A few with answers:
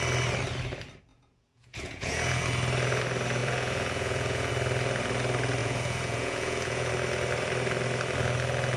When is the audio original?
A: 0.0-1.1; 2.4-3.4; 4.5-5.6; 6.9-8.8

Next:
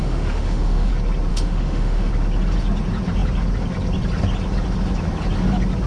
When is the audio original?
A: 0.9-1.3; 2.1-5.9

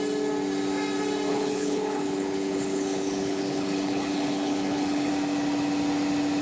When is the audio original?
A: 0.0-1.3; 5.1-6.4

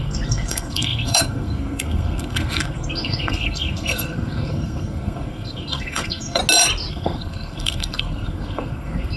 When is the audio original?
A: 6.4-6.9

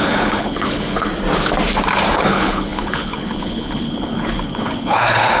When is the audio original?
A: 1.1-2.1

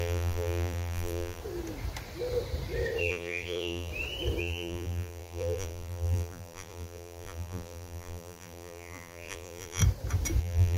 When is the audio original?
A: 1.4-3.0; 3.9-4.4; 9.8-10.4

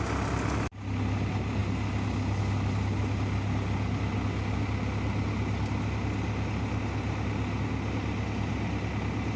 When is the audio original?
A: 0.0-9.4

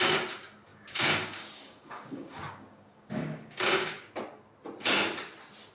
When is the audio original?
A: 0.0-0.7; 4.1-5.7